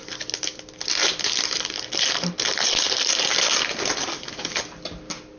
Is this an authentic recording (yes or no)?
yes